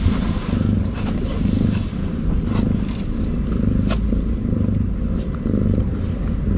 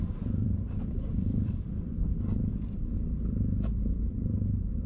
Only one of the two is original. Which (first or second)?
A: first